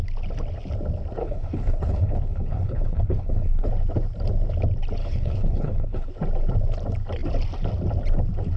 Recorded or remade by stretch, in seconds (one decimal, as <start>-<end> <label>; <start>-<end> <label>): 0.0-1.2 recorded; 1.2-3.7 remade; 3.7-5.0 recorded; 5.0-6.1 remade; 6.1-8.6 recorded